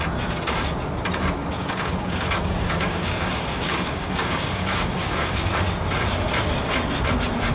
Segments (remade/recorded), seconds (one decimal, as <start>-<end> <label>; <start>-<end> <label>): 0.0-1.4 recorded; 1.4-5.4 remade; 5.4-7.5 recorded